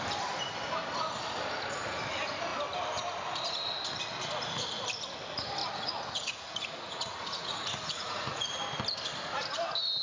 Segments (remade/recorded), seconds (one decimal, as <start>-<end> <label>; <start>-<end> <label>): 0.0-5.6 recorded; 5.6-8.6 remade; 8.6-10.0 recorded